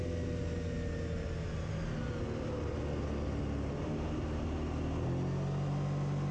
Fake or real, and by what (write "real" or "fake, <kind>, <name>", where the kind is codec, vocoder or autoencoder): real